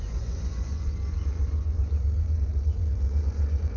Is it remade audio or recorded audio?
remade